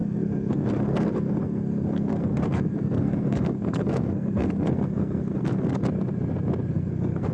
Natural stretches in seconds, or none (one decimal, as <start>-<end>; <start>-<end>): 5.8-6.7